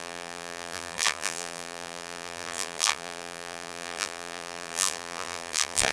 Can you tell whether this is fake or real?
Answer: fake